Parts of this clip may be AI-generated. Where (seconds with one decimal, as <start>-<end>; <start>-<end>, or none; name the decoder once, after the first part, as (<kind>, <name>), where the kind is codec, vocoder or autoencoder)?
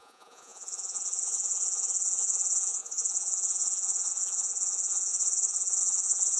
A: 0.0-6.4 (vocoder, Vocos)